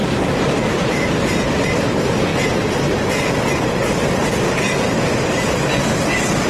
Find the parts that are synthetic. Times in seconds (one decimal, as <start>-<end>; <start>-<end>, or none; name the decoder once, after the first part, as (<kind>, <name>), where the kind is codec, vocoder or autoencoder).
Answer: 0.0-2.3 (vocoder, BigVGAN v2); 5.0-6.5